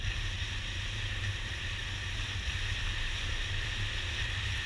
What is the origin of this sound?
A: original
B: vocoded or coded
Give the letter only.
A